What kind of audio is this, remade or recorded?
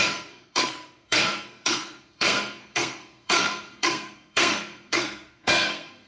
remade